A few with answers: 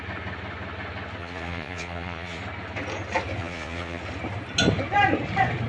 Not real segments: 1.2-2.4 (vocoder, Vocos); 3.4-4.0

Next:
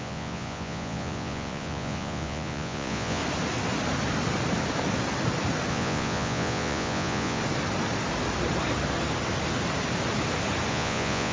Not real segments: 0.0-3.2 (vocoder, Vocos); 5.7-7.4; 10.7-11.3

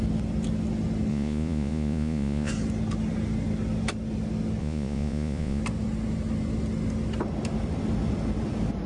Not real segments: 1.1-2.5 (vocoder, Vocos); 4.6-5.6

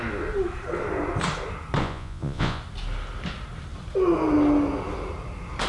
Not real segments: 1.8-2.6 (vocoder, Vocos)